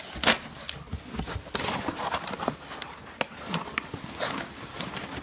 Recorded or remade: recorded